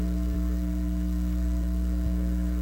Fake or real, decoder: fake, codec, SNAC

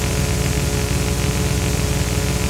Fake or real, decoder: real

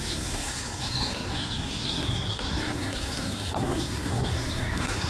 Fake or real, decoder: fake, codec, SNAC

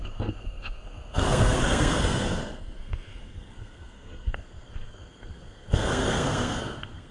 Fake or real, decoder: fake, codec, SNAC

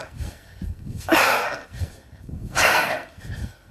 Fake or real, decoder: fake, codec, SNAC